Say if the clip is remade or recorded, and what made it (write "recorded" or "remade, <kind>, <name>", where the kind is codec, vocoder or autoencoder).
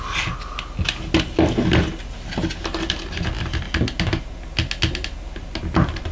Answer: recorded